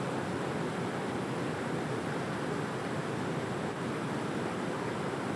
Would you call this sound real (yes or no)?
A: yes